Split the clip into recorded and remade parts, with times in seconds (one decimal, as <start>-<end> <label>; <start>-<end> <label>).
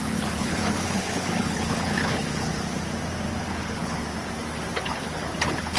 0.0-2.5 remade; 2.5-3.4 recorded; 3.4-4.0 remade; 4.0-4.8 recorded; 4.8-5.8 remade